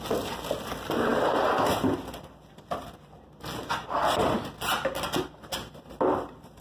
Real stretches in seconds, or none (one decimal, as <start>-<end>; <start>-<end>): 0.0-6.6